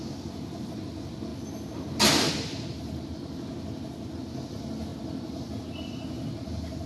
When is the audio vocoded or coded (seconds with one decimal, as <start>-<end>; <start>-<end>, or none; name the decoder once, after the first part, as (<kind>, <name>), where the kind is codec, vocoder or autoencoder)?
none